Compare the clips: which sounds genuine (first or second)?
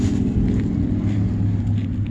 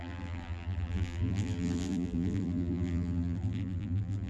first